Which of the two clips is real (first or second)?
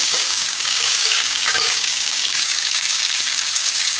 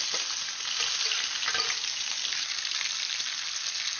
second